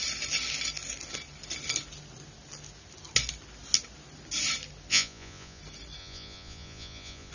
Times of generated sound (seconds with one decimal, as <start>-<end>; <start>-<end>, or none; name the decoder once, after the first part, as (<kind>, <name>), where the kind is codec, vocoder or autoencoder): 4.9-5.6 (vocoder, Vocos); 6.0-7.3